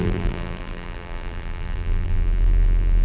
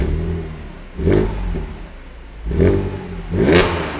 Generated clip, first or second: first